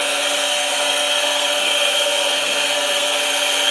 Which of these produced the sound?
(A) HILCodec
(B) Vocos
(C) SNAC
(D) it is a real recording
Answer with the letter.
C